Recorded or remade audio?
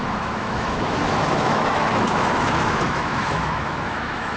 remade